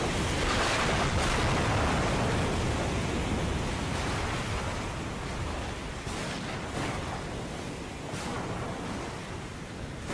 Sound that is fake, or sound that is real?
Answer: real